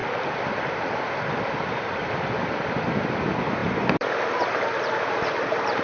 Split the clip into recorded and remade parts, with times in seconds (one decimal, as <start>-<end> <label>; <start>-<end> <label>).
0.0-3.1 remade; 3.1-3.6 recorded; 3.6-5.8 remade